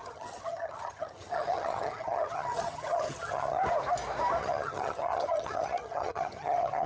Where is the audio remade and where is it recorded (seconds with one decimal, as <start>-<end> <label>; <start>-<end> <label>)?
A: 0.0-3.6 remade; 3.6-4.4 recorded; 4.4-6.9 remade